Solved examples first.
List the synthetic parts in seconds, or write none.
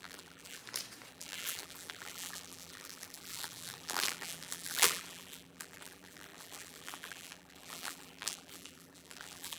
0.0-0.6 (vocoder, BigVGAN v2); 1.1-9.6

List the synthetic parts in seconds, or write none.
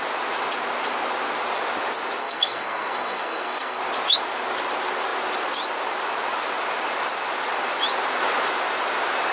2.2-3.8 (codec, SNAC)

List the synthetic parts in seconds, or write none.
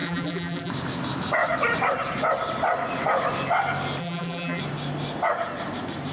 0.0-0.7 (vocoder, BigVGAN v2); 4.0-4.6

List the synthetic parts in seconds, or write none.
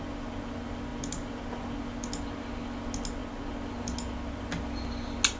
none